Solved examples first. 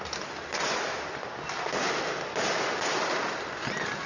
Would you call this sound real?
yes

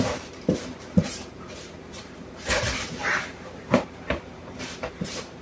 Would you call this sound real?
no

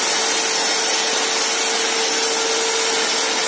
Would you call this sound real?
yes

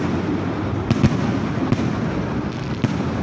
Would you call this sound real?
yes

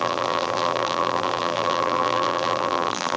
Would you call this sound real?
no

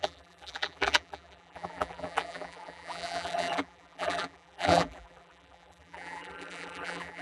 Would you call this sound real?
no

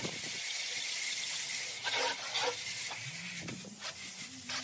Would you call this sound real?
yes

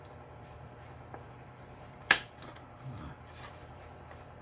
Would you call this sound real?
no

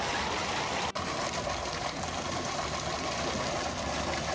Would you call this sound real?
yes